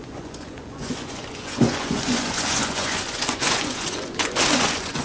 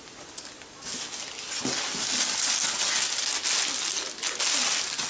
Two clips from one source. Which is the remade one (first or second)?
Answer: first